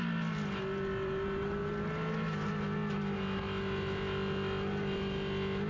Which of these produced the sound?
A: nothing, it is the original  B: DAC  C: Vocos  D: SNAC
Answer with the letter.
A